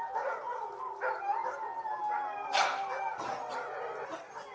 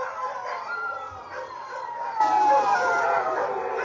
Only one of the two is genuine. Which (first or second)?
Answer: first